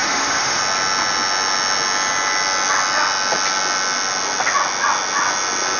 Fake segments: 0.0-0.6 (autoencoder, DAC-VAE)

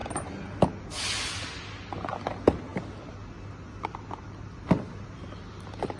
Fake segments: none

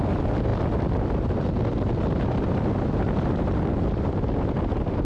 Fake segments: none

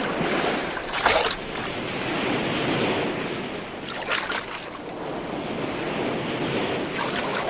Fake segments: 0.6-1.7 (vocoder, BigVGAN v2)

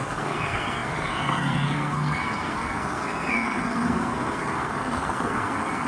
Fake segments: 0.0-5.9 (codec, SNAC)

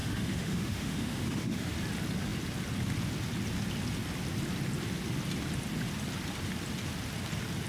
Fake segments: 0.0-1.7 (autoencoder, DAC-VAE)